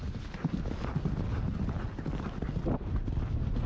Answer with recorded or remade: recorded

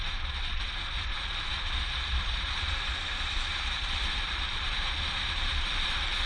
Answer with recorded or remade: remade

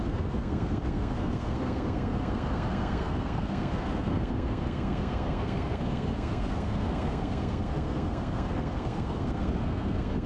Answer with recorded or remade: remade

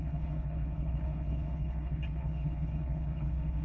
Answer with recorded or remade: remade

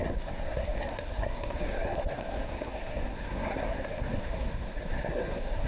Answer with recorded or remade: remade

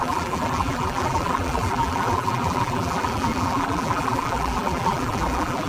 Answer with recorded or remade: remade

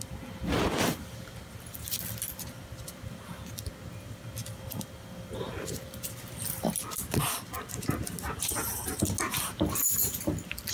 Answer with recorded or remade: recorded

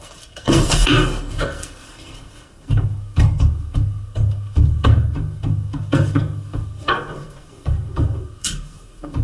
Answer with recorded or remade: remade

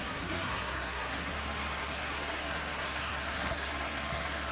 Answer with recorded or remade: remade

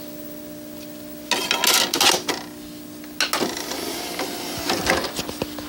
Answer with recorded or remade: recorded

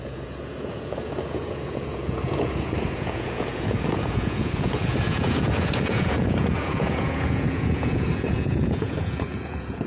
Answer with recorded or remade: remade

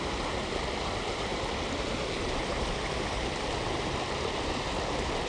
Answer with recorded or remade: recorded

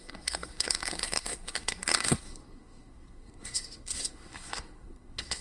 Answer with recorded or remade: remade